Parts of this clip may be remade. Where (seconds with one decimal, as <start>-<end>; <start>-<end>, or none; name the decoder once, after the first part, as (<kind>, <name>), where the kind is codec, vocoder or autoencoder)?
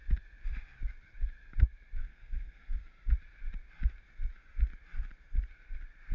2.0-2.8 (codec, SNAC)